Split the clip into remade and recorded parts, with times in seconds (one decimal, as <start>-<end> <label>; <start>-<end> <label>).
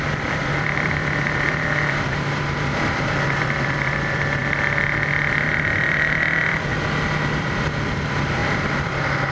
0.0-4.4 remade; 4.4-5.1 recorded; 5.1-6.7 remade; 6.7-7.4 recorded; 7.4-8.4 remade; 8.4-9.3 recorded